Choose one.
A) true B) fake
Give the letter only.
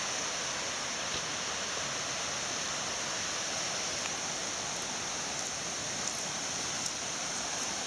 A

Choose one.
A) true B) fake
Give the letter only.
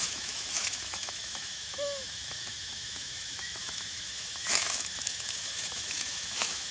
B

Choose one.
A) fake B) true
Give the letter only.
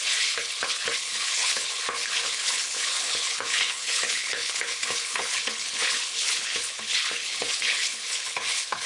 A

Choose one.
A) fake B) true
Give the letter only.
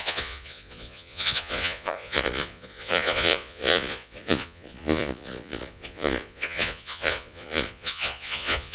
A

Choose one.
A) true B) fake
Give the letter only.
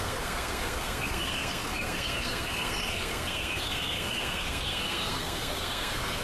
B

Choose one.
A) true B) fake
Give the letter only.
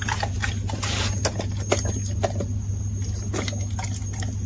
A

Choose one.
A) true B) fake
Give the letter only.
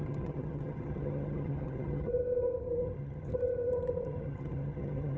B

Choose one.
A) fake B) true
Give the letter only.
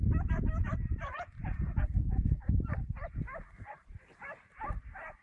A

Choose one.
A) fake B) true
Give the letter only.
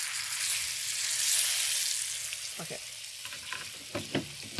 B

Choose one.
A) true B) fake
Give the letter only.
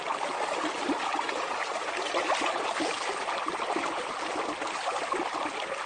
A